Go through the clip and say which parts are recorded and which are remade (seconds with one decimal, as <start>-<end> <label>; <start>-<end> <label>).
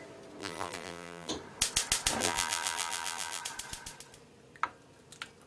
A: 0.0-0.4 recorded; 0.4-1.3 remade; 1.3-2.2 recorded; 2.2-3.4 remade; 3.4-5.5 recorded